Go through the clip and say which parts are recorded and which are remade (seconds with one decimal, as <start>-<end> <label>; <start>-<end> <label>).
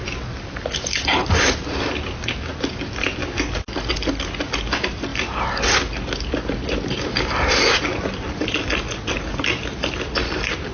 0.0-10.7 recorded